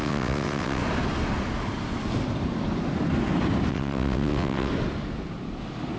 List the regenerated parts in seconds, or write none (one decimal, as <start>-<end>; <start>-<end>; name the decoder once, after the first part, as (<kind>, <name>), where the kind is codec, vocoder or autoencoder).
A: 0.0-0.8 (vocoder, WaveNeXt); 3.7-4.7